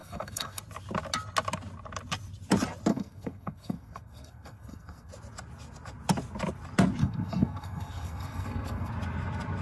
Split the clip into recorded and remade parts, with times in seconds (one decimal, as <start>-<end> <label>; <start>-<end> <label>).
0.0-0.6 remade; 0.6-2.9 recorded; 2.9-5.1 remade; 5.1-7.0 recorded; 7.0-8.9 remade; 8.9-9.6 recorded